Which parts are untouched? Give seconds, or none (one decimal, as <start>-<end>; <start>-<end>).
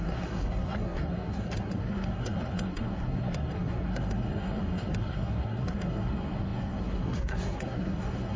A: none